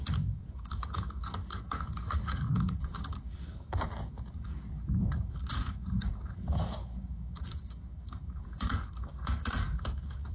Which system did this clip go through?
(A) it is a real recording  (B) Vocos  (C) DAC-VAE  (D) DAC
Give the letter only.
D